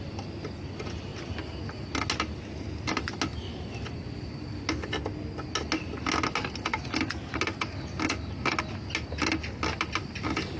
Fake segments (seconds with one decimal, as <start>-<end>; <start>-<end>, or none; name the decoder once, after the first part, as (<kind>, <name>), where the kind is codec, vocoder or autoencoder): none